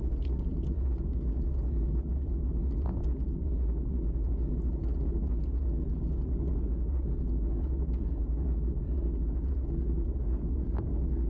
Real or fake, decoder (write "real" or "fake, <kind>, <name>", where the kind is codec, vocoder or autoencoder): real